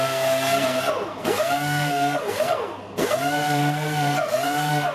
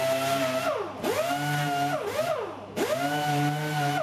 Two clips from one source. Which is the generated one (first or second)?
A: first